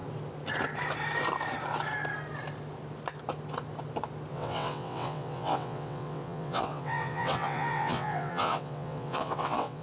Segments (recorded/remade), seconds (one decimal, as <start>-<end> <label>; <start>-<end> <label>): 0.0-4.3 recorded; 4.3-9.8 remade